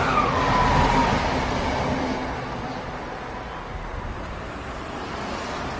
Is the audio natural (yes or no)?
yes